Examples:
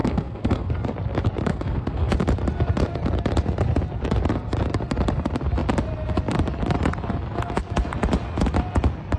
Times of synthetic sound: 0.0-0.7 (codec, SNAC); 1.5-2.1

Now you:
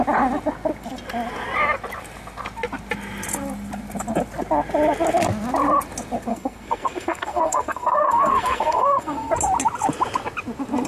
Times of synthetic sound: 6.3-9.3 (codec, SNAC)

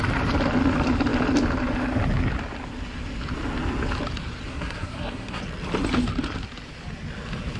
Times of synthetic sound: 4.5-5.4 (codec, SNAC)

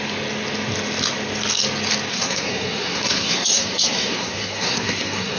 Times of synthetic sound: 2.1-5.4 (codec, SNAC)